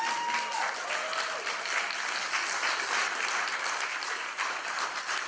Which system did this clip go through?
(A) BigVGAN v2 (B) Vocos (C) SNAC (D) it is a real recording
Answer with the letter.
D